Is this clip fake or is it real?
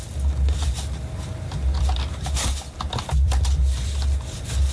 real